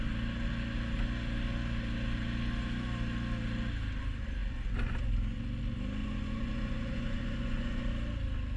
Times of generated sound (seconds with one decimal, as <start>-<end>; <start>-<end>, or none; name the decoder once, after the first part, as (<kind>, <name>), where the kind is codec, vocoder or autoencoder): 6.0-7.8 (vocoder, Vocos)